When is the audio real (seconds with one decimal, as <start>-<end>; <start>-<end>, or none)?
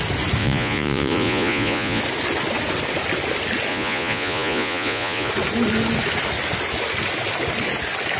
0.0-0.4; 2.0-3.7; 5.3-8.2